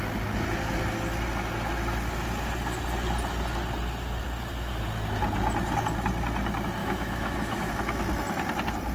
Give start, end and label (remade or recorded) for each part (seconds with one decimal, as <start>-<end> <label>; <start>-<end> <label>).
0.0-6.8 recorded; 6.8-7.7 remade; 7.7-8.9 recorded